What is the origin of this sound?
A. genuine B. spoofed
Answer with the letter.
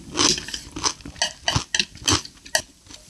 A